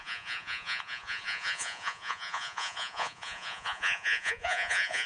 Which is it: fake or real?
fake